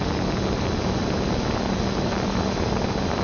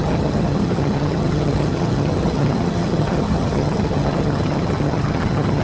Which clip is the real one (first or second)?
first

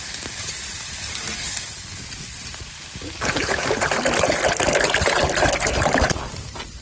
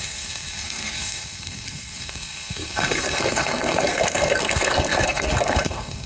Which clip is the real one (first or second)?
first